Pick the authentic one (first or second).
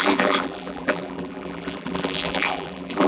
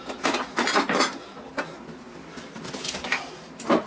second